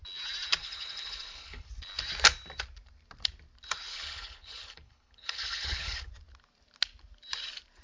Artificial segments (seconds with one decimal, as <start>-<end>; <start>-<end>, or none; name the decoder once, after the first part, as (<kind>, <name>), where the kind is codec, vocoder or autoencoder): 0.6-1.7 (codec, HILCodec); 3.9-6.1